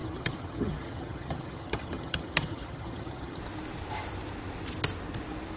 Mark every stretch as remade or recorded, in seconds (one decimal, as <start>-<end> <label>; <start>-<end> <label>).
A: 0.0-3.4 remade; 3.4-5.6 recorded